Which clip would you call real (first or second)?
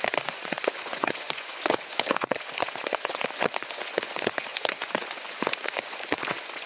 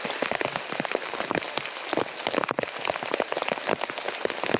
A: second